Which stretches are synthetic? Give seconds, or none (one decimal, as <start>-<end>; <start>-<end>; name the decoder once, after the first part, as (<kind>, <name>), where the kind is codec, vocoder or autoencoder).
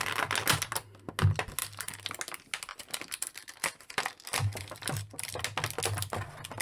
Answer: 1.6-2.1 (vocoder, BigVGAN v2); 2.7-5.4